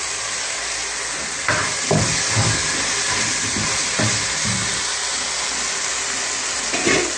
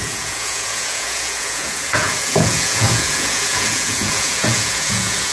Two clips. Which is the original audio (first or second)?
first